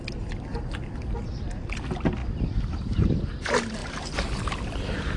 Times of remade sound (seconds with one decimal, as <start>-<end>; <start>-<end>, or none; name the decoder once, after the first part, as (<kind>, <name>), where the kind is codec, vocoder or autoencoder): none